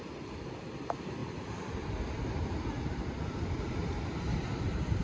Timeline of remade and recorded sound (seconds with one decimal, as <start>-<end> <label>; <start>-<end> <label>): 0.0-5.0 recorded